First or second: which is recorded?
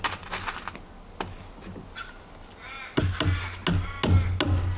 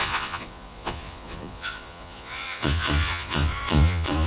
first